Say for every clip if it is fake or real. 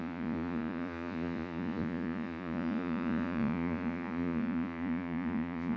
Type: fake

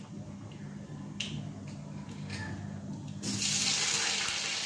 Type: real